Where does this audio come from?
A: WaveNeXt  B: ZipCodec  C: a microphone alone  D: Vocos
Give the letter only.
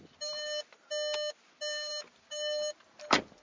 C